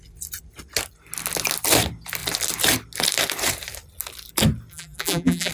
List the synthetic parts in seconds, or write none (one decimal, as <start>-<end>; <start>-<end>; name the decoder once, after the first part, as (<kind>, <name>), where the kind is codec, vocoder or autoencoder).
4.7-5.5 (vocoder, BigVGAN v2)